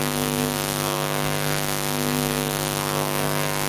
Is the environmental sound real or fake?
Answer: real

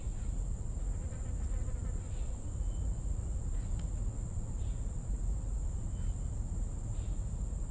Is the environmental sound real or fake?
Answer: fake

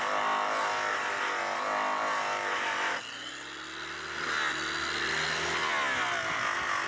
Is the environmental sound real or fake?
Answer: real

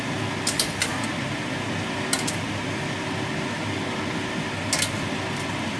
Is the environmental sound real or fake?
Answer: real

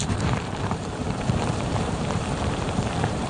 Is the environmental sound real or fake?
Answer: fake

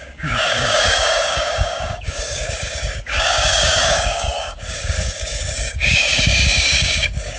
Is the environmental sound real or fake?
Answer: fake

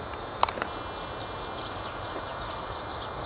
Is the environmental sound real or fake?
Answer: real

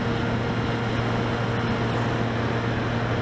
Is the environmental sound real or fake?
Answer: real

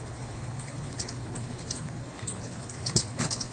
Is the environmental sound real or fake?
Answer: fake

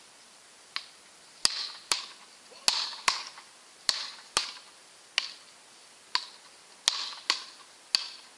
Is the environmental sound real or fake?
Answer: real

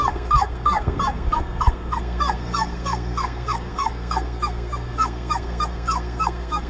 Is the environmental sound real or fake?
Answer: fake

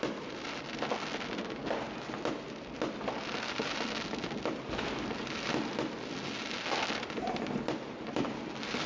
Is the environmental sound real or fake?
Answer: real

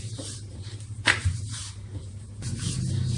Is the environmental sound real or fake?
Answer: fake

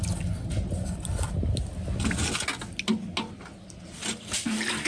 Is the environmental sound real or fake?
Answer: real